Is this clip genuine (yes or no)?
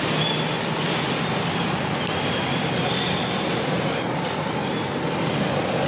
yes